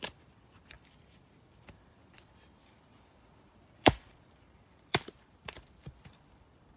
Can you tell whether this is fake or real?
fake